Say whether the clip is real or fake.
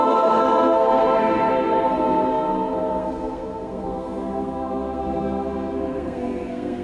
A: fake